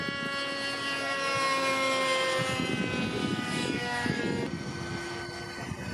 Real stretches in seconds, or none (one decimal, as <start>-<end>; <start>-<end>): 0.0-3.2; 4.2-5.9